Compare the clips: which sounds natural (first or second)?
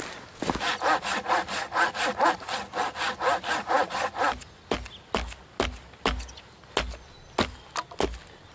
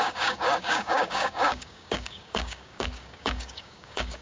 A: first